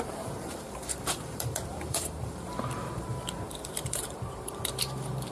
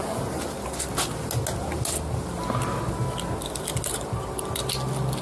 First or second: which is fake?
first